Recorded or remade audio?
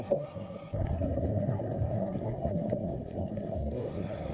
remade